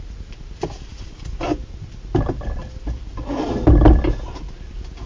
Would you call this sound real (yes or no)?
yes